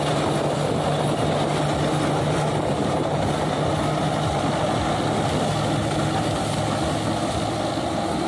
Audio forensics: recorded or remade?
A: recorded